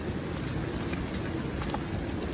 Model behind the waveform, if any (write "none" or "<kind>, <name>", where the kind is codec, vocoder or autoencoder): none